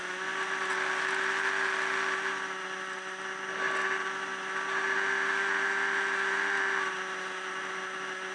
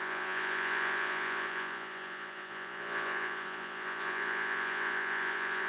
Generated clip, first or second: second